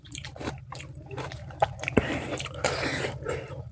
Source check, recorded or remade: remade